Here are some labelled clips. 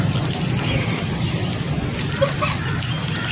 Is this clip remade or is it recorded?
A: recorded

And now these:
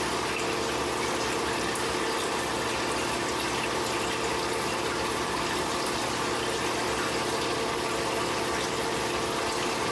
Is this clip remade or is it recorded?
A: recorded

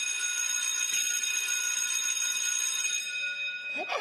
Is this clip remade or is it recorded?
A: recorded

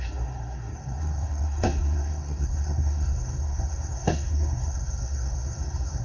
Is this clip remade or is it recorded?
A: remade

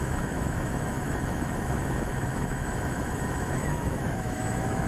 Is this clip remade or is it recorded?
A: remade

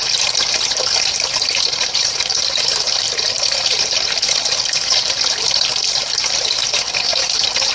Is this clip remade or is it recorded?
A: remade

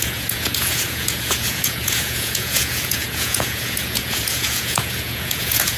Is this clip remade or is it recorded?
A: remade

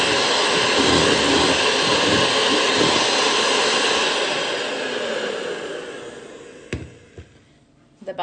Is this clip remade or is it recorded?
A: recorded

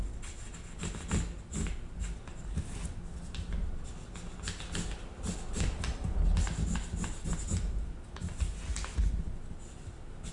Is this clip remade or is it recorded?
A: recorded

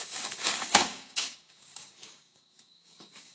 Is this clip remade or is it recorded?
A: remade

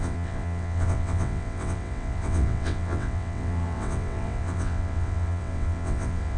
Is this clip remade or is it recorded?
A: remade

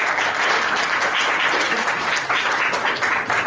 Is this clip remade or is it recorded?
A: recorded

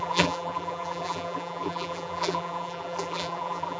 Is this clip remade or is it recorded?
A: remade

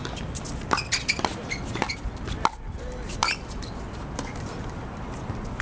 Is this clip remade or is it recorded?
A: recorded